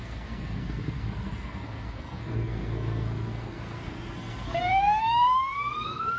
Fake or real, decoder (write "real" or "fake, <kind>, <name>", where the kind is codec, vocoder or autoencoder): fake, codec, SNAC